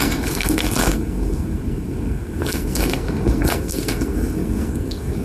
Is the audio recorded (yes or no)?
no